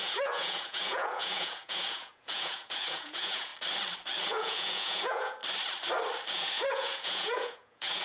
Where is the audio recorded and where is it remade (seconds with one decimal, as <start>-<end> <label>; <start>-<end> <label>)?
0.0-3.5 remade; 3.5-4.3 recorded; 4.3-5.4 remade; 5.4-6.3 recorded; 6.3-8.0 remade